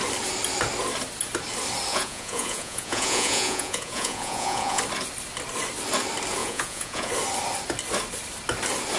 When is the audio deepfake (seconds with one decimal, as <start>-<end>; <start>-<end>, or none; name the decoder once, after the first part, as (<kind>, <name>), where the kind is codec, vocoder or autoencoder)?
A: 1.9-4.8 (vocoder, Vocos); 6.4-7.1